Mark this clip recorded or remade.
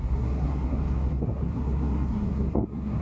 remade